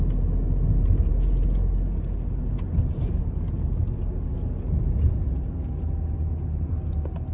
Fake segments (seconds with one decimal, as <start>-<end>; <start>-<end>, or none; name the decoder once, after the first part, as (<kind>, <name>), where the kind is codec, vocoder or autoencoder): none